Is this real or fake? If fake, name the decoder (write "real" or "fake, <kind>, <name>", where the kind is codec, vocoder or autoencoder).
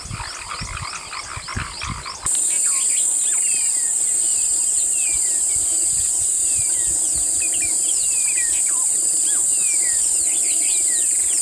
real